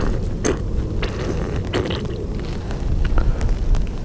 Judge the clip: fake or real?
real